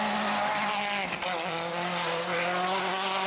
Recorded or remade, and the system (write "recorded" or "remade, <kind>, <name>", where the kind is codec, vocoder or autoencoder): recorded